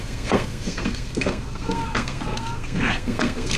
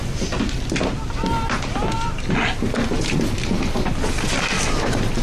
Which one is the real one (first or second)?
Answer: second